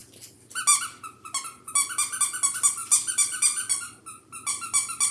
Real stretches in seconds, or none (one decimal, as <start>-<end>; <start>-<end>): 0.0-5.1